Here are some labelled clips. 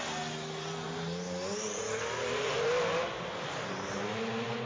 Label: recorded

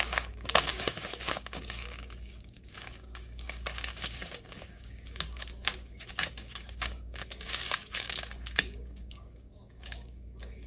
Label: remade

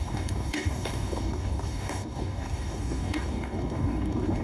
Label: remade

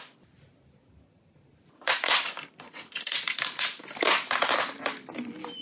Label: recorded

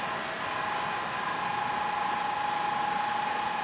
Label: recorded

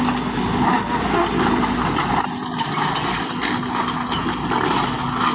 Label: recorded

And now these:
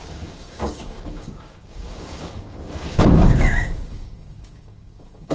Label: remade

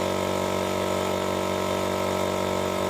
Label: recorded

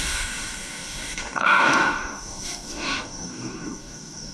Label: remade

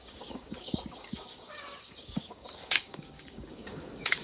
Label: remade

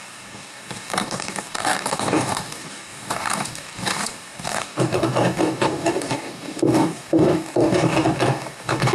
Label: remade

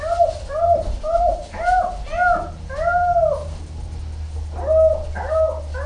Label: recorded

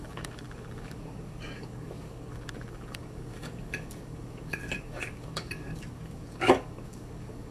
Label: remade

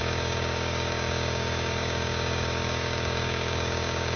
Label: remade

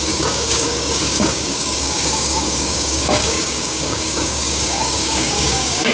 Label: remade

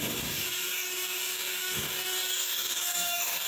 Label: remade